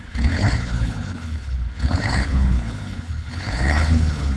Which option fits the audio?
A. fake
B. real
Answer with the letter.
A